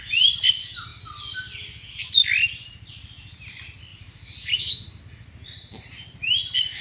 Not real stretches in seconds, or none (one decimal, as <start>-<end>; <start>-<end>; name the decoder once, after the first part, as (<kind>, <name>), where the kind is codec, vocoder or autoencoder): 3.9-5.0 (vocoder, BigVGAN v2)